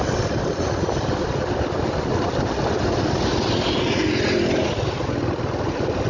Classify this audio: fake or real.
real